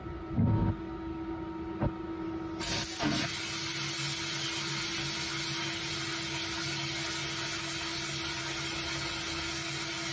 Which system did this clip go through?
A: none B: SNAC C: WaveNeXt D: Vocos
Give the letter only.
A